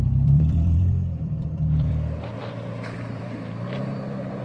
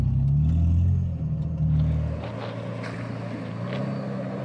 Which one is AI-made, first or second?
first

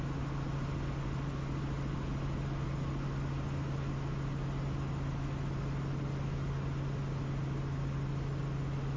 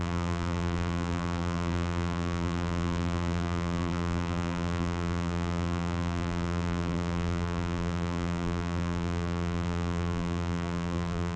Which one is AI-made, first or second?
second